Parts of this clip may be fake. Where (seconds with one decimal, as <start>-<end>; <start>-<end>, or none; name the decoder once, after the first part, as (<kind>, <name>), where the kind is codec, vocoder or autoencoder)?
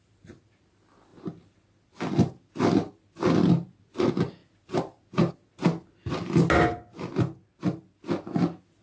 none